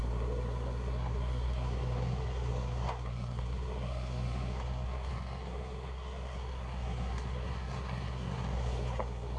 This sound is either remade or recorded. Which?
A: remade